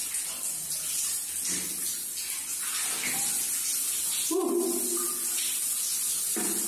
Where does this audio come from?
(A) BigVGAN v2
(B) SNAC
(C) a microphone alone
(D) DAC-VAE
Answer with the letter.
C